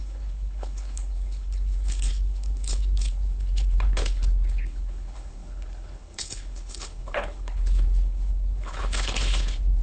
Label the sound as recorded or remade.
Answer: remade